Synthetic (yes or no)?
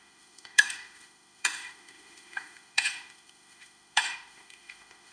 yes